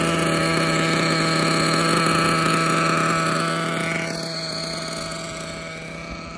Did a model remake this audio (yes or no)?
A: no